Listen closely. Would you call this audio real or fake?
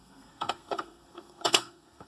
fake